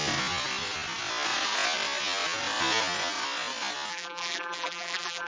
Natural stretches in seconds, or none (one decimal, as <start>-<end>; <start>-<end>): 0.0-3.9